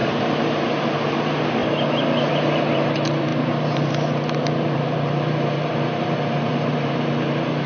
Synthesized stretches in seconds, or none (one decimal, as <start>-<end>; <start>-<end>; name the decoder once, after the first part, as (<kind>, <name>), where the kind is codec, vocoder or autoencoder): 0.0-1.6 (vocoder, BigVGAN v2); 2.3-7.7